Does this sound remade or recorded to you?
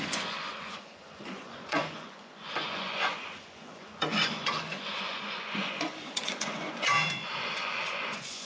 remade